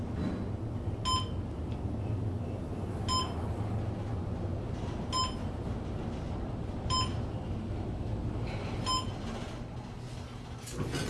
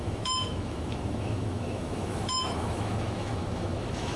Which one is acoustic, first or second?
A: first